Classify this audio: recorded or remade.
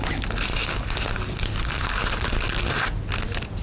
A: recorded